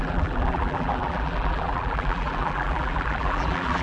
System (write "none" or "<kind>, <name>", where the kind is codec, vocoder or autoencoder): vocoder, BigVGAN v2